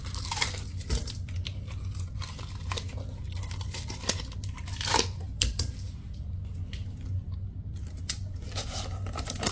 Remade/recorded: recorded